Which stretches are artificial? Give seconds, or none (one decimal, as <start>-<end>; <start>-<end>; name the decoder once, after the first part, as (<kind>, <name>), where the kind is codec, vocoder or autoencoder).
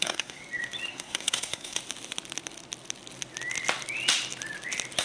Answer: 0.0-0.4 (codec, SNAC); 0.9-1.8